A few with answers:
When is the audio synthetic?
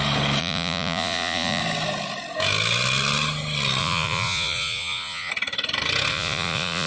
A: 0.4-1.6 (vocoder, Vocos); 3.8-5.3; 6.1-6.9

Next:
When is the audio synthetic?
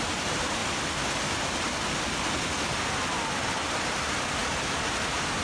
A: 0.0-0.6 (vocoder, BigVGAN v2); 3.7-5.4